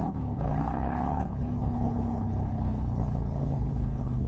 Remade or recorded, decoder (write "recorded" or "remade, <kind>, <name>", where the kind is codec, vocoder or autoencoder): remade, codec, HILCodec